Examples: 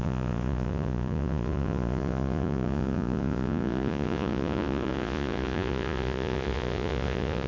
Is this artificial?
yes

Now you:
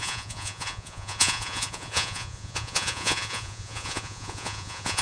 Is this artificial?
yes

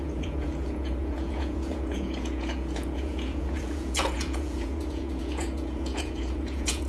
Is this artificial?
yes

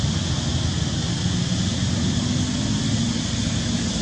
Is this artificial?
no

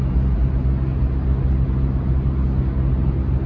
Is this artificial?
no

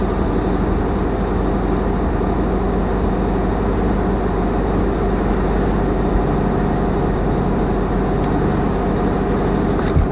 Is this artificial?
no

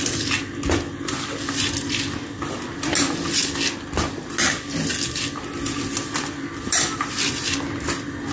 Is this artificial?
no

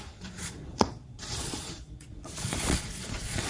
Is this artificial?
yes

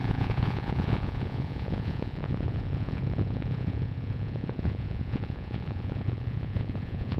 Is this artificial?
yes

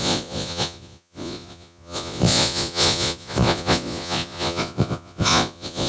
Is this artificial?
yes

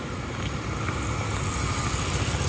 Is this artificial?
no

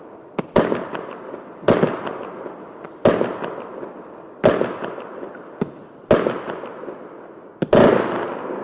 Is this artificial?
no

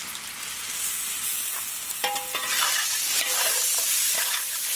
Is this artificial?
no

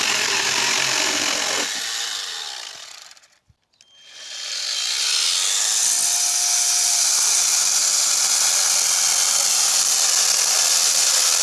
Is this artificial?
no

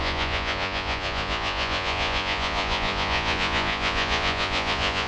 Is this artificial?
yes